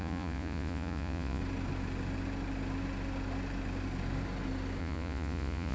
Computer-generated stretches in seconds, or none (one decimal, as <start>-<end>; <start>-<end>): 0.0-1.4; 4.8-5.7